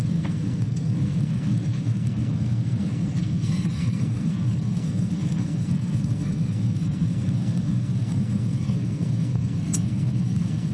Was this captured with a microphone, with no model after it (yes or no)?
no